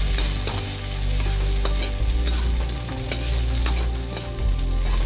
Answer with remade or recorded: recorded